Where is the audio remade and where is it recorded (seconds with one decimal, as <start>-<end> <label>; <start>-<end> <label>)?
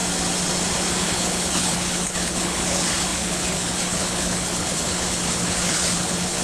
0.0-1.0 recorded; 1.0-6.4 remade